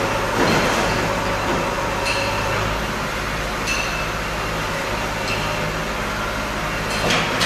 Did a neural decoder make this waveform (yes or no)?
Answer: no